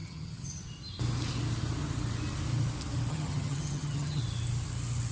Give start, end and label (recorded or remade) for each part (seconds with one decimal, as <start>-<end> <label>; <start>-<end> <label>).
0.0-0.6 remade; 0.6-3.1 recorded; 3.1-4.2 remade; 4.2-5.1 recorded